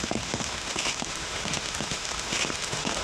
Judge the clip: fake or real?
fake